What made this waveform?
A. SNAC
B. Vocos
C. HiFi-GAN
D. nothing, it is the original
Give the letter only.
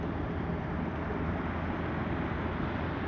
D